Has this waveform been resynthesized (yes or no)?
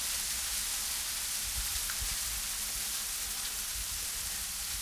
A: no